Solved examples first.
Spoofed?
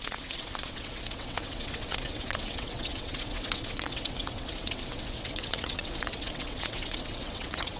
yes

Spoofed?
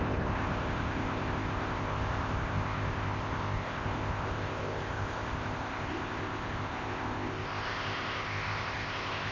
yes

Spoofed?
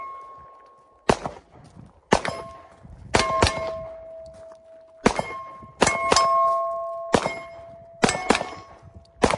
no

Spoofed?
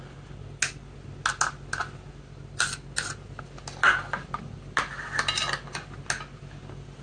no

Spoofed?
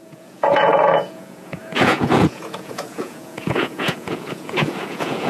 yes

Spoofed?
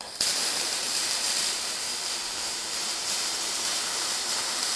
yes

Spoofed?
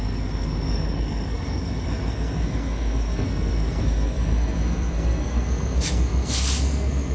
yes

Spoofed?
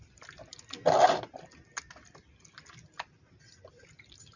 no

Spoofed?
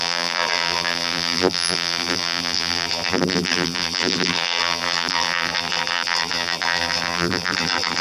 yes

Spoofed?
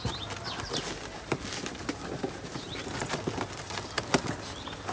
no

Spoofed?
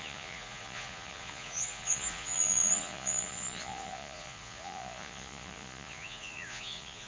yes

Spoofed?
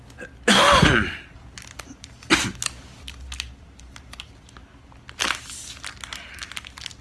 no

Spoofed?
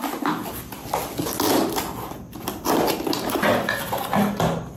no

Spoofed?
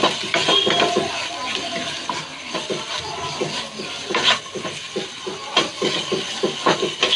no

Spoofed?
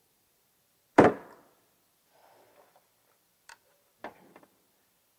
yes